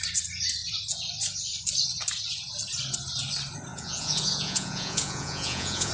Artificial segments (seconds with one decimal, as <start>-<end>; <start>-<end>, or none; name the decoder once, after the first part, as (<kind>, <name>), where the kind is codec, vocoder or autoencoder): 3.7-5.9 (vocoder, Vocos)